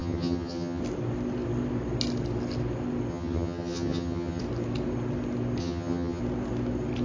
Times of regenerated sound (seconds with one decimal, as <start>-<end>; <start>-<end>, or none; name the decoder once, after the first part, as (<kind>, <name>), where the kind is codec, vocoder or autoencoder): 0.0-0.8 (vocoder, HiFi-GAN); 3.1-4.4; 5.6-6.2